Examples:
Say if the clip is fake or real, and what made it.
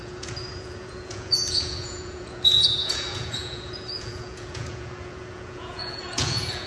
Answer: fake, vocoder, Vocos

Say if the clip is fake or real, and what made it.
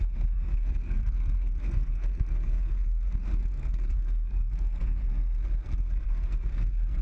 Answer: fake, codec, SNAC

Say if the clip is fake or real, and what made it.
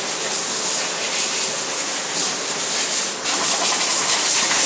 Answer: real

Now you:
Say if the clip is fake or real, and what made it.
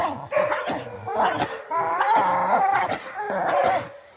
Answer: real